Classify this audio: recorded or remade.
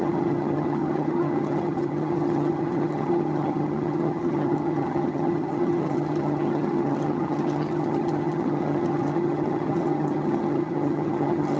remade